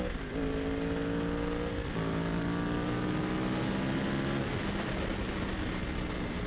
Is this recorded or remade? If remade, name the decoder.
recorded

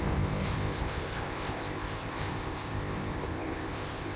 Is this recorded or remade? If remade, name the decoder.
remade, codec, ZipCodec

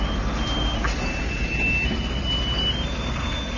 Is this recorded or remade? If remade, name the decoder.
recorded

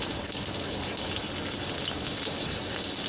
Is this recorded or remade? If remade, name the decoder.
recorded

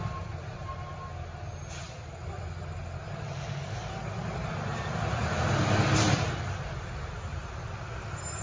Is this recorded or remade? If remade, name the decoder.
recorded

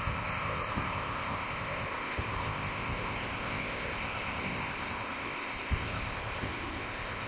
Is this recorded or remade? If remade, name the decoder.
remade, codec, ZipCodec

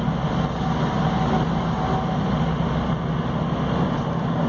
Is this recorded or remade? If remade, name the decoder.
recorded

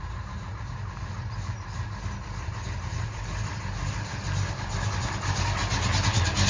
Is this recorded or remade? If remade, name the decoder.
recorded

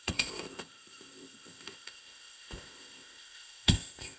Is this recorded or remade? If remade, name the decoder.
remade, codec, ZipCodec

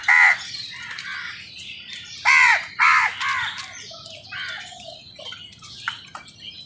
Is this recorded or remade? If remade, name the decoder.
recorded